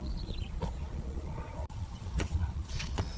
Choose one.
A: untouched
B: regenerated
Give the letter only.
B